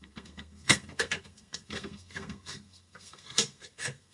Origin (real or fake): fake